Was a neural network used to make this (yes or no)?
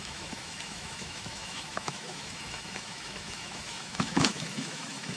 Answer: yes